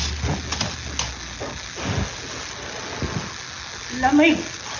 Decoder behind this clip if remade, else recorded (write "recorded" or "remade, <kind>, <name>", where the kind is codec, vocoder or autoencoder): recorded